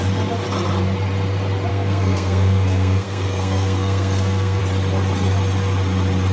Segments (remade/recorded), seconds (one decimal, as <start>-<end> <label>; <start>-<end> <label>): 0.0-1.7 recorded; 1.7-4.6 remade; 4.6-6.3 recorded